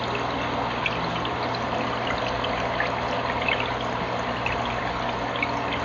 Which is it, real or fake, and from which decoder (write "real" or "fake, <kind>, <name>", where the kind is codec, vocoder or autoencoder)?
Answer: real